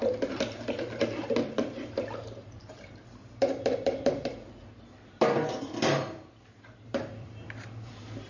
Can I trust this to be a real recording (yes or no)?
no